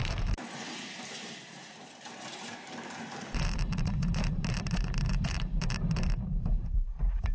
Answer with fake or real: fake